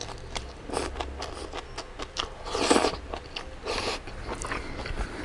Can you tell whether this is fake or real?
real